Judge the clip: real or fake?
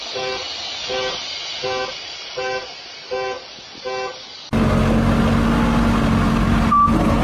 real